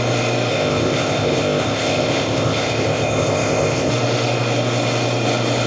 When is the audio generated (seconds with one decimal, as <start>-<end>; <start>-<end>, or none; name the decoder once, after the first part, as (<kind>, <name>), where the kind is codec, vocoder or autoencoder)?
0.5-3.9 (codec, ZipCodec)